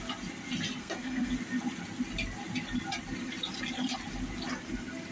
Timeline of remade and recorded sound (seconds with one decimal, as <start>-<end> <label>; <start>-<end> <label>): 0.0-0.8 recorded; 0.8-1.3 remade; 1.3-5.1 recorded